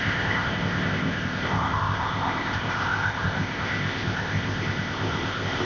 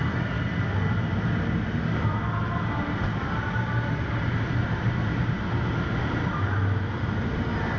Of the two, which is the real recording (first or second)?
second